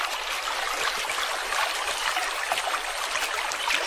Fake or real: real